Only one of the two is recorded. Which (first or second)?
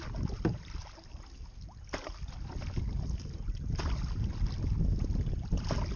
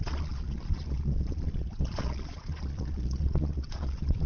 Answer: first